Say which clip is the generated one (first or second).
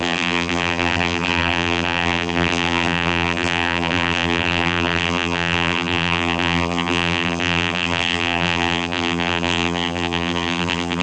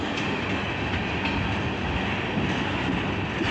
first